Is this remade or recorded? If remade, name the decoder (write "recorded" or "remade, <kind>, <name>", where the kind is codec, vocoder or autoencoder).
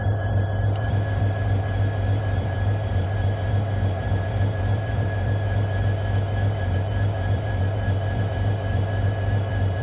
remade, vocoder, BigVGAN v2